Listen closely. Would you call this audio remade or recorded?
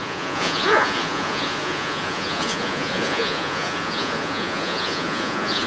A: remade